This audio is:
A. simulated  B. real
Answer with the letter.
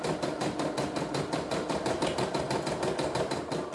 B